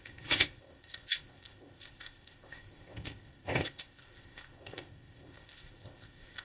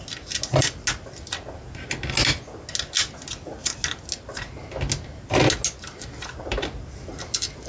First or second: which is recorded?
second